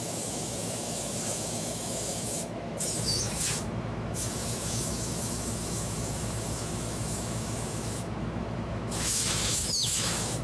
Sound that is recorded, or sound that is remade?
remade